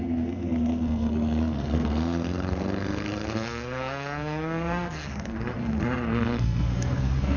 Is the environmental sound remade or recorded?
remade